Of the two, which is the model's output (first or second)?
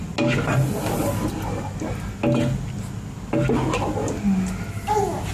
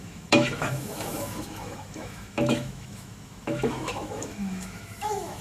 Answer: second